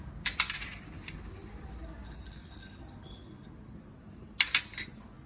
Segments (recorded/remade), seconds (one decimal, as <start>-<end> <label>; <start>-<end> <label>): 0.0-5.3 recorded